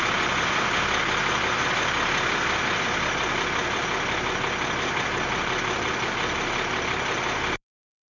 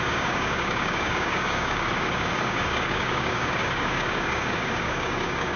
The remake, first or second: second